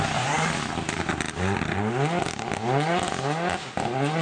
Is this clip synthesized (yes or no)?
no